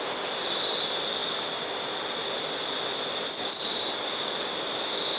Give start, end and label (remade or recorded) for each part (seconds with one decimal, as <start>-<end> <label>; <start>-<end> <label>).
0.0-5.2 recorded